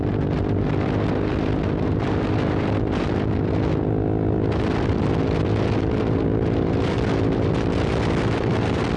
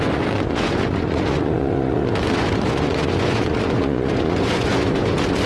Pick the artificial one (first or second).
second